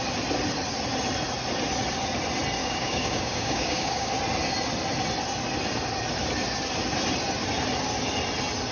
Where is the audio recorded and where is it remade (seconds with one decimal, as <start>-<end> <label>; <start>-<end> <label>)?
0.0-2.6 recorded; 2.6-4.1 remade; 4.1-8.7 recorded